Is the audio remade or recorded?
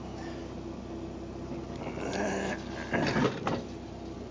recorded